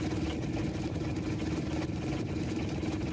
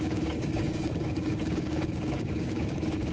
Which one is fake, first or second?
second